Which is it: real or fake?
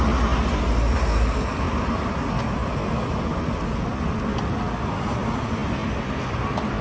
real